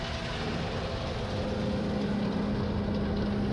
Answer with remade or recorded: recorded